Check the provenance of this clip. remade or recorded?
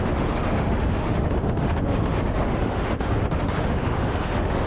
remade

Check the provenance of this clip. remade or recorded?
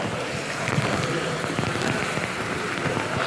recorded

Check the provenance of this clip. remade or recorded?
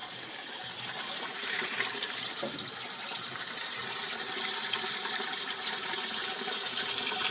remade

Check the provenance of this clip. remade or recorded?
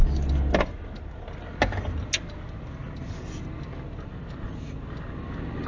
recorded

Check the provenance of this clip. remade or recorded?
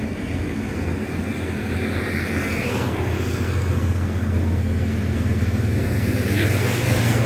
remade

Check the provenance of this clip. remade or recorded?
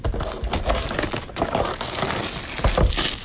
recorded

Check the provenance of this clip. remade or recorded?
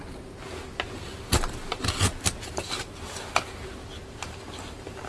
recorded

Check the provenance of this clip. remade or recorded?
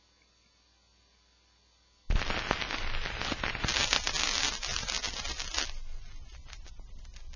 recorded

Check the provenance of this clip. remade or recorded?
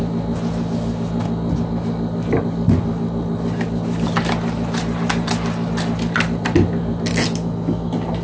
recorded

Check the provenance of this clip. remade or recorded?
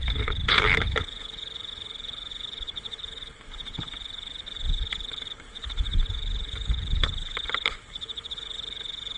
remade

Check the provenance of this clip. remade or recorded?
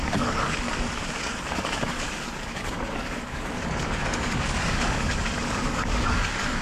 remade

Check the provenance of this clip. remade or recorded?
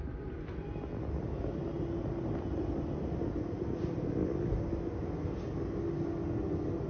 recorded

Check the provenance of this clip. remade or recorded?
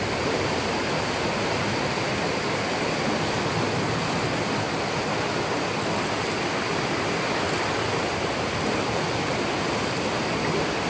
recorded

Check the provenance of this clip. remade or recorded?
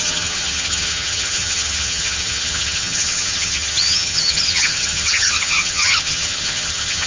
remade